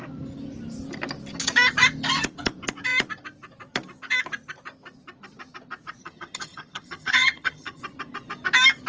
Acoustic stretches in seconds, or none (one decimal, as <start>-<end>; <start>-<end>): 0.0-6.0; 7.8-8.9